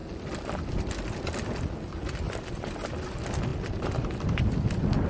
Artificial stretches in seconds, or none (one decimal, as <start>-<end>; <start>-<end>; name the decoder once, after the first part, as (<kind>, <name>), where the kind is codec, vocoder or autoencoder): none